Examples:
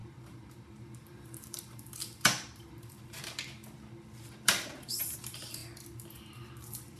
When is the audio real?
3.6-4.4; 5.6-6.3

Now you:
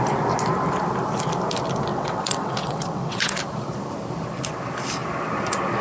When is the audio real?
0.0-1.9; 3.4-5.8

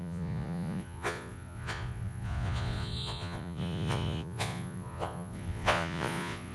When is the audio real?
none